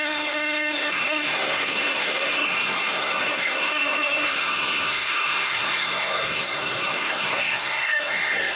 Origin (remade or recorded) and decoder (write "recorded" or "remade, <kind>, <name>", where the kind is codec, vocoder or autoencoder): remade, codec, SNAC